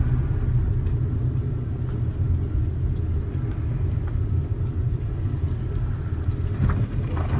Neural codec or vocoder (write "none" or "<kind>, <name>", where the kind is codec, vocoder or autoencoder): none